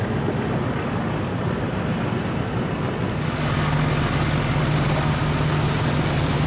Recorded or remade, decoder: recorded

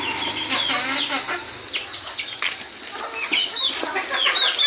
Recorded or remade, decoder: recorded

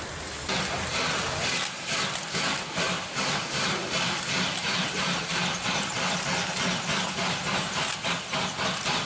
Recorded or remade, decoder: remade, vocoder, BigVGAN v2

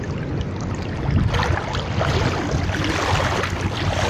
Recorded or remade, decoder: recorded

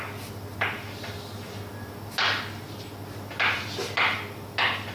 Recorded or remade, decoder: recorded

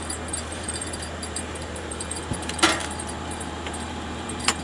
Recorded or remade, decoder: remade, vocoder, BigVGAN v2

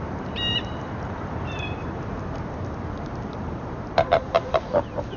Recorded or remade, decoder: remade, vocoder, BigVGAN v2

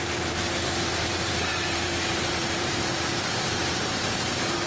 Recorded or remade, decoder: remade, vocoder, BigVGAN v2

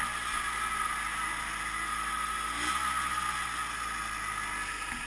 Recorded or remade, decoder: recorded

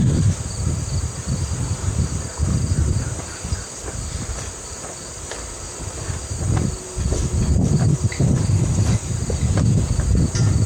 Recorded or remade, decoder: recorded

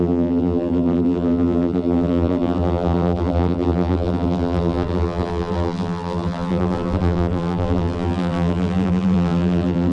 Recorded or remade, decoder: remade, vocoder, BigVGAN v2